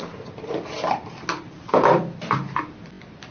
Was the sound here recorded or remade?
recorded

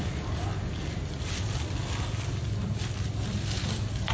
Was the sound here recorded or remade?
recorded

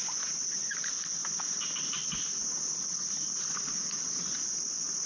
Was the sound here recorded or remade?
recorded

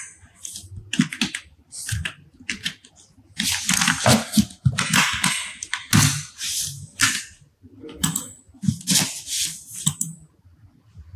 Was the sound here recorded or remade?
recorded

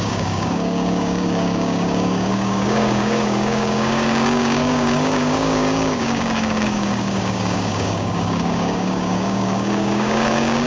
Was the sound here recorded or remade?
remade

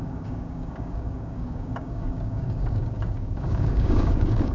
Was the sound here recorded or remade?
remade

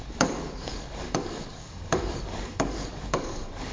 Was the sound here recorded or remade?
remade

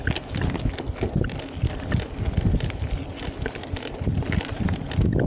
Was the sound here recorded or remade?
recorded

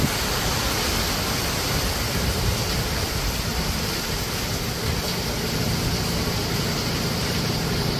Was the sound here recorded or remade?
recorded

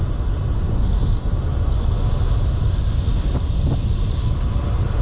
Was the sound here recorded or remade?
recorded